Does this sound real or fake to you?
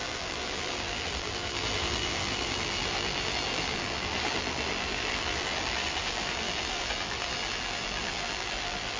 fake